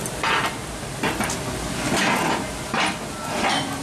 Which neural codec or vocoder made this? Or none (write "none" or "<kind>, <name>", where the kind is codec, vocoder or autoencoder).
none